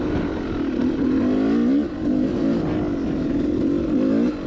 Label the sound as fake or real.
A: real